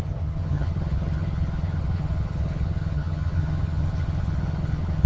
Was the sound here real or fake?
fake